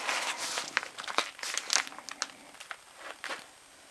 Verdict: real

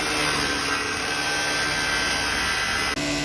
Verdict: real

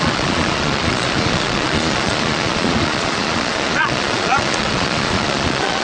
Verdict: fake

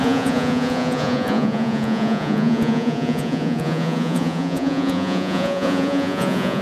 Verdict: fake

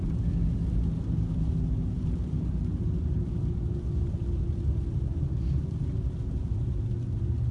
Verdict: real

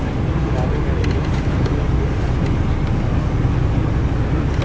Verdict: real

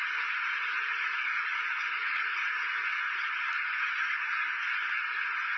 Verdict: fake